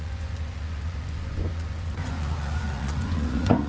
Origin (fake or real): fake